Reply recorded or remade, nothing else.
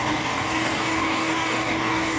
remade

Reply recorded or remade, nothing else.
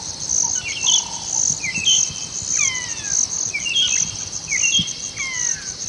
recorded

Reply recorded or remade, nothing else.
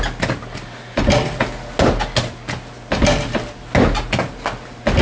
recorded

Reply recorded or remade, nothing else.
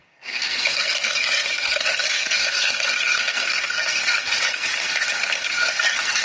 remade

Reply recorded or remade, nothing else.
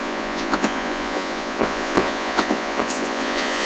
remade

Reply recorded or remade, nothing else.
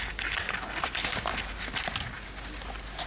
recorded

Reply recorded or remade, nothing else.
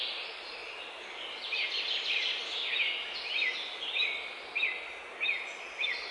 recorded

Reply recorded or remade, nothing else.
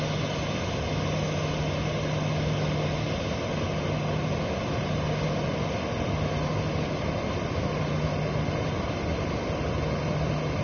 recorded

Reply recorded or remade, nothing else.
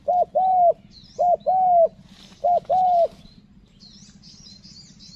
recorded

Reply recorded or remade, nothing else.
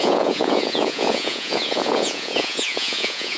remade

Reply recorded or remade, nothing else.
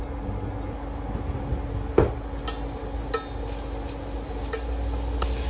recorded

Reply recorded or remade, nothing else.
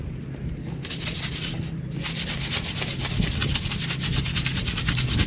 recorded